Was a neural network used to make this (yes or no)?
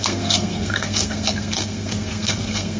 yes